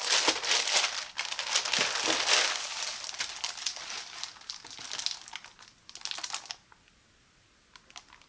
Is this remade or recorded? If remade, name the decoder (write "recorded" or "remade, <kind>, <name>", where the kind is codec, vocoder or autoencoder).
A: recorded